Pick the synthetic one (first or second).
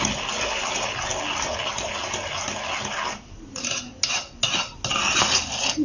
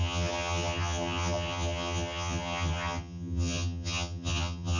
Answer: second